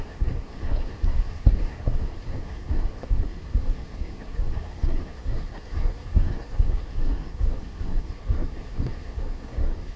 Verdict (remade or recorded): remade